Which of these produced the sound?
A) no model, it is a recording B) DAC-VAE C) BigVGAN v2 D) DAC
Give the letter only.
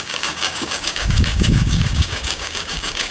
D